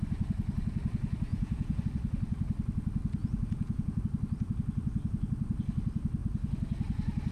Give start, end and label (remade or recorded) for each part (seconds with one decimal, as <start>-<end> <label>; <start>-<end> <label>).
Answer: 0.0-1.3 recorded; 1.3-1.8 remade; 1.8-3.2 recorded; 3.2-4.0 remade; 4.0-7.3 recorded